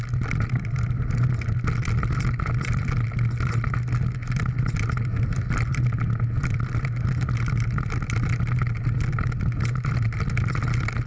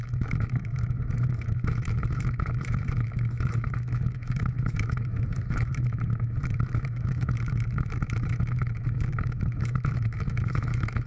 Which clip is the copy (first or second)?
second